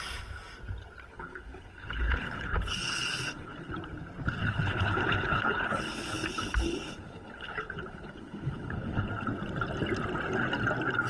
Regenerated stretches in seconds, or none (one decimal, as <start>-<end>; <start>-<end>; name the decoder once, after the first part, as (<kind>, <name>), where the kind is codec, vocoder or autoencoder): 1.1-3.7 (codec, HILCodec); 4.4-9.1